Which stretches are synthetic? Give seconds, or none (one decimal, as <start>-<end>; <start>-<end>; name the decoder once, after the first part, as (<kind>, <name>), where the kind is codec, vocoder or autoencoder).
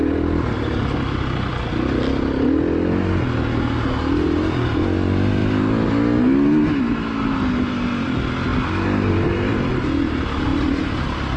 10.5-11.4 (vocoder, BigVGAN v2)